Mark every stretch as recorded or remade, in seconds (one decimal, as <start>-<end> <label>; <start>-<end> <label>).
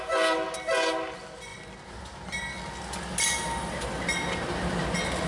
0.0-5.3 recorded